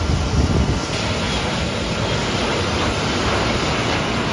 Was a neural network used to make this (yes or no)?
no